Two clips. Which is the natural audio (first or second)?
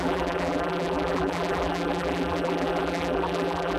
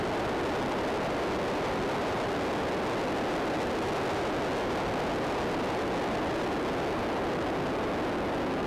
second